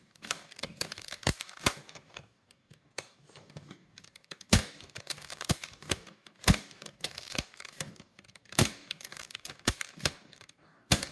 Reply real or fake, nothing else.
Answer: fake